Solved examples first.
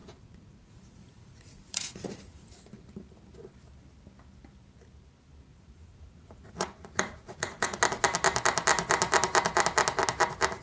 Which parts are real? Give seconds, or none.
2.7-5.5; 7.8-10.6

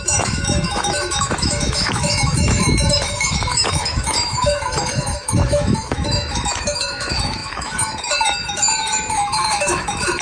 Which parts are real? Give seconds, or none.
none

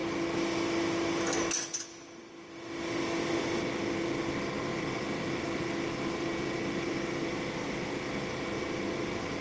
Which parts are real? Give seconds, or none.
0.0-9.4

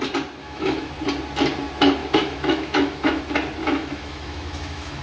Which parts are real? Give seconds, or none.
0.0-0.4; 0.9-2.0; 3.2-3.6

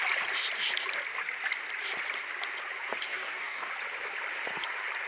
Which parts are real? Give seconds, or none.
0.0-3.1; 3.7-5.1

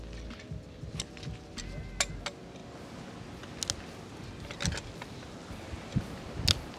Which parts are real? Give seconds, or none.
0.0-6.8

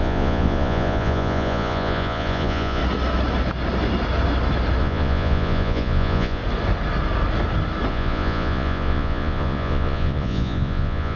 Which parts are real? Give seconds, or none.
2.8-4.8; 6.4-7.9

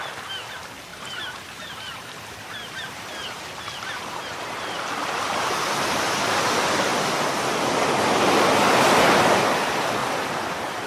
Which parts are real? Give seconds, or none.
0.0-0.9; 4.9-10.9